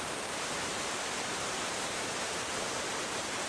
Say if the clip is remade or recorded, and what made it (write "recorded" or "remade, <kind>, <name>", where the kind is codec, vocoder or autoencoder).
remade, vocoder, BigVGAN v2